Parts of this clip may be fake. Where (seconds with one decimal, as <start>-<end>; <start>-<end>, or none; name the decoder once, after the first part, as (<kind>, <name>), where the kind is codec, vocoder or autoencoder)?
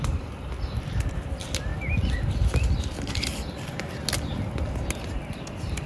none